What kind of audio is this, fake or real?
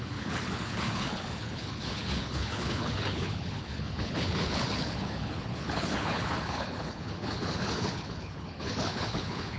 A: fake